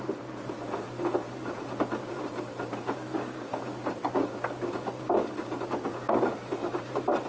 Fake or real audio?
real